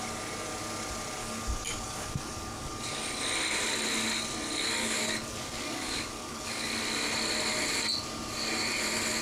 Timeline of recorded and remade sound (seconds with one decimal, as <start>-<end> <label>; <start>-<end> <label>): 0.0-1.2 recorded; 1.2-3.0 remade; 3.0-4.8 recorded; 4.8-6.7 remade; 6.7-9.2 recorded